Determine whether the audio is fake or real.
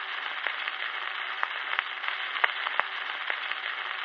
real